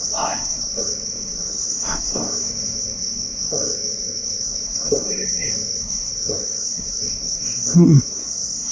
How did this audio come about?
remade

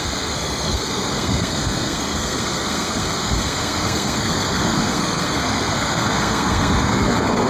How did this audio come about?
remade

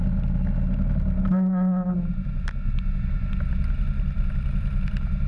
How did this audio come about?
recorded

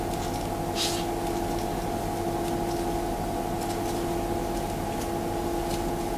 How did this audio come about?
recorded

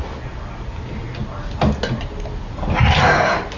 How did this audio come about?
recorded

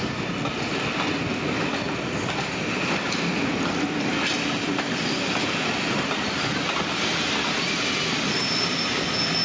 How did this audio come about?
recorded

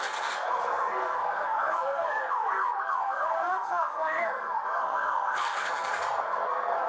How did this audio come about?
remade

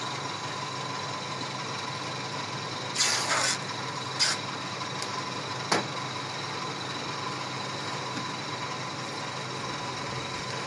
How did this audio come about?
recorded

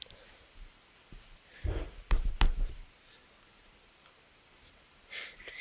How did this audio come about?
recorded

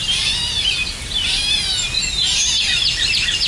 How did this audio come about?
recorded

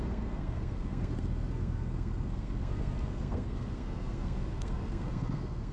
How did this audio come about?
remade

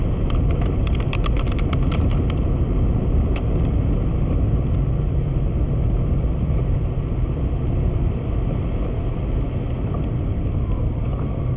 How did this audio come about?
recorded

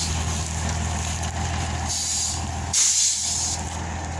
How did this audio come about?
recorded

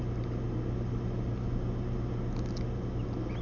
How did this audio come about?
recorded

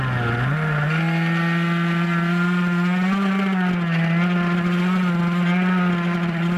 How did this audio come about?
recorded